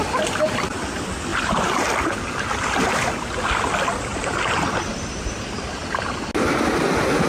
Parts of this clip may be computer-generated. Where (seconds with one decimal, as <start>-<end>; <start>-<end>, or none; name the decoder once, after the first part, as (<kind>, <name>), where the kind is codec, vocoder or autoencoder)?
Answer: 4.1-5.7 (vocoder, BigVGAN v2)